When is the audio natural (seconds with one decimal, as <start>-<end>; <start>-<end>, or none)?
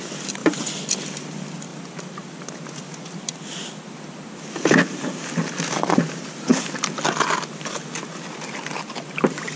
0.0-0.4; 0.9-9.6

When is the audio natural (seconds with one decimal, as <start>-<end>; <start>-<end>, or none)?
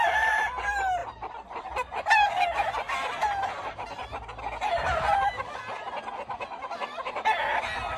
0.0-8.0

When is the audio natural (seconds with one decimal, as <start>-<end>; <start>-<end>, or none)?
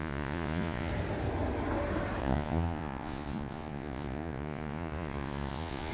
0.9-2.2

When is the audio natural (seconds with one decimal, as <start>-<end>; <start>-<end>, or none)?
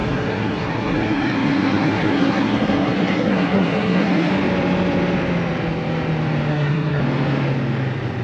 4.3-6.5; 7.0-8.2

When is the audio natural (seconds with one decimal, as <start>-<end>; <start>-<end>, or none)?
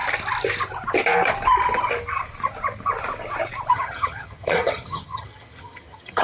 0.0-3.7